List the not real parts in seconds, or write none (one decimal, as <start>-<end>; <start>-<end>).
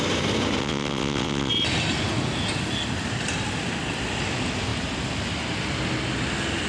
0.6-1.5